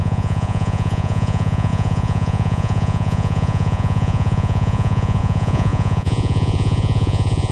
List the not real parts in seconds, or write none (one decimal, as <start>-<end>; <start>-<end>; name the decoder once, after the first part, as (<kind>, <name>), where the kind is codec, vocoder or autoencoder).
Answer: 0.0-7.5 (vocoder, Vocos)